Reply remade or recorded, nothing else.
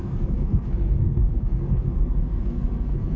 remade